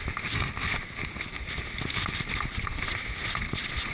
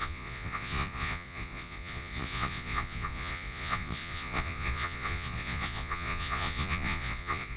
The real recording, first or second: first